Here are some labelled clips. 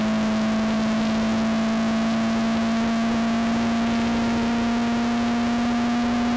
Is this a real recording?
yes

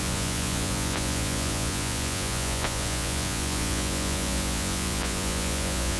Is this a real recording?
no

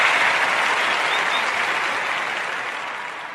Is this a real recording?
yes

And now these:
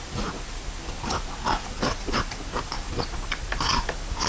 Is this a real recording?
yes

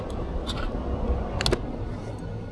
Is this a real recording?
yes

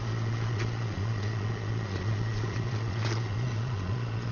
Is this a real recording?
no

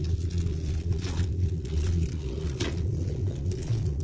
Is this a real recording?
no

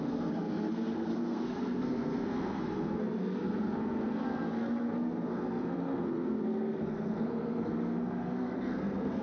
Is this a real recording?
no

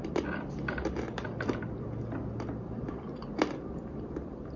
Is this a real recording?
no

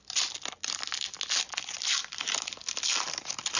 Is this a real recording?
yes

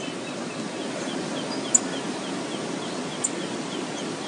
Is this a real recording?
yes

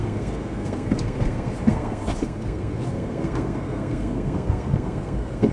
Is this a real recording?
no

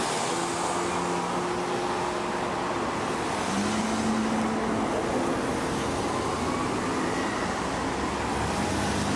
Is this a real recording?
yes